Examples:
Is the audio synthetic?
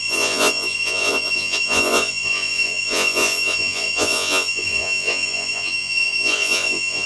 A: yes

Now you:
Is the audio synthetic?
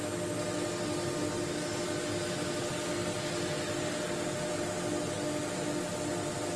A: no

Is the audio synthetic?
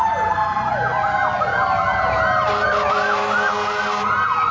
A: no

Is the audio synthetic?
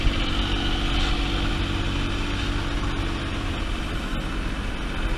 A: no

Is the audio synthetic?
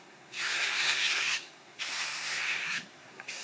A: yes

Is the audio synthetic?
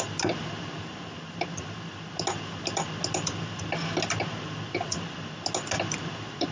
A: no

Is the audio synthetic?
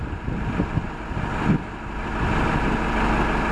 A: no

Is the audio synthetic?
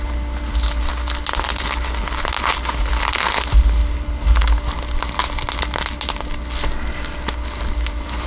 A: no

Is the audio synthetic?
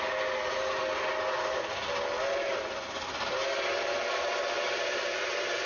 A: no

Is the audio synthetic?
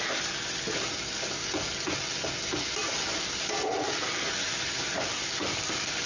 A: no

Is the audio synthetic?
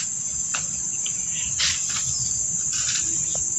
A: no